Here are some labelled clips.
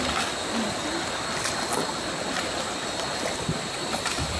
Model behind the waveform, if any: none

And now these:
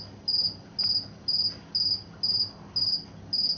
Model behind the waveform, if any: none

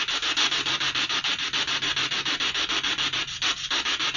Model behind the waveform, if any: none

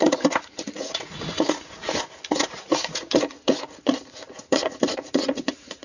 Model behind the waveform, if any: vocoder, Vocos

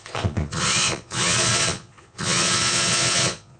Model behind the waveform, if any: vocoder, Vocos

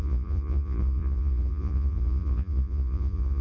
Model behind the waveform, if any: vocoder, Vocos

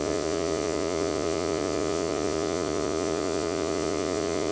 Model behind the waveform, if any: vocoder, Vocos